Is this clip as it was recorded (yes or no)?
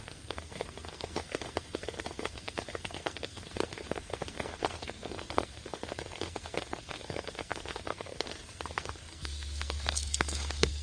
no